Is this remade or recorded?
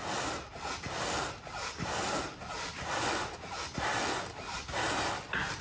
recorded